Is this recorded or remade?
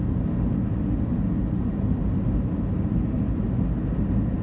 recorded